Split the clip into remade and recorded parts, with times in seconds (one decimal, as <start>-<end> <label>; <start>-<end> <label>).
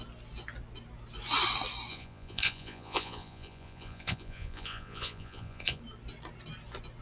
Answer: 0.0-1.9 recorded; 1.9-5.8 remade; 5.8-7.0 recorded